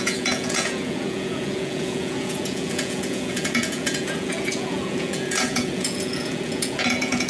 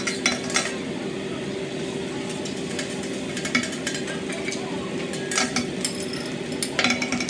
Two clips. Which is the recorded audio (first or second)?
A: second